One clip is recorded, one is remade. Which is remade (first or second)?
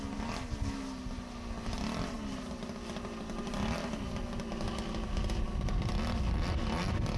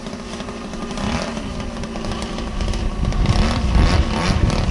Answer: second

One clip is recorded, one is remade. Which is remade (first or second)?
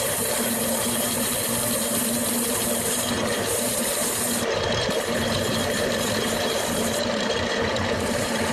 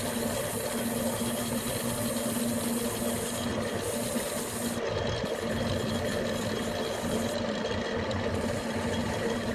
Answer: first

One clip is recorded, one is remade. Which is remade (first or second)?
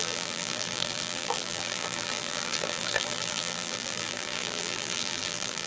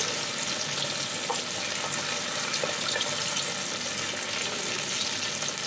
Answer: first